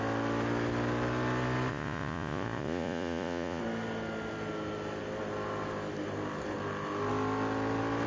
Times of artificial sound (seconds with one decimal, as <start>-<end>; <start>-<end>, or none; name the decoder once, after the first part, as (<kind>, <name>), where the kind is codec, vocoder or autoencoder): 1.7-3.6 (vocoder, Vocos)

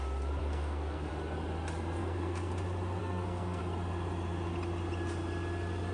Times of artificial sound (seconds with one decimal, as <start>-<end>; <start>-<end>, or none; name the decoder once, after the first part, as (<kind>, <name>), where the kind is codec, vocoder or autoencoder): 0.4-1.1 (codec, SNAC); 2.0-2.5; 3.0-3.6